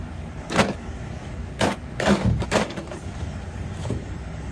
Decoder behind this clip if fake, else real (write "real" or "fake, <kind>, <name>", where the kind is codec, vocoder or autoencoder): fake, codec, DAC